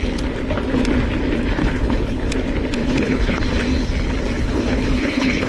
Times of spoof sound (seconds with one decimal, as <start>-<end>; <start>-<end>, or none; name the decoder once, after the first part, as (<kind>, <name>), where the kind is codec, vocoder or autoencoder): 1.6-2.3 (codec, HILCodec); 2.8-3.4; 4.4-5.5

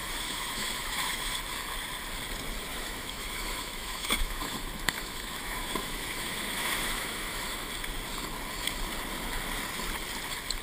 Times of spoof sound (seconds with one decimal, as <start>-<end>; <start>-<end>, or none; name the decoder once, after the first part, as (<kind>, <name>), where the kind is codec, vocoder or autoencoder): 0.0-1.4 (autoencoder, DAC-VAE); 2.7-7.7

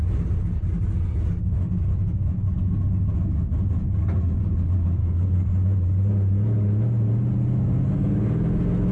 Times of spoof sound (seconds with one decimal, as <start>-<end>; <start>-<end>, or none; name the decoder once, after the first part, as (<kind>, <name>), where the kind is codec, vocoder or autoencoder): 5.0-5.5 (codec, SNAC)

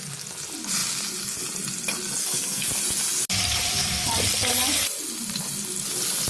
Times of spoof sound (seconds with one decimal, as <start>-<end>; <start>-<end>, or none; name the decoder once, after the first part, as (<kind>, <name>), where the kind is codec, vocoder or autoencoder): 2.2-2.7 (codec, SNAC)

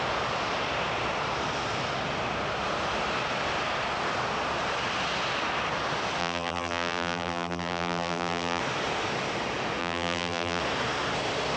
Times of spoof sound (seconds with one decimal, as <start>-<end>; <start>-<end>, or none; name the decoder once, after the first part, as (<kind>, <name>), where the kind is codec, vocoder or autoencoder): 6.2-8.6 (vocoder, BigVGAN v2); 9.8-10.6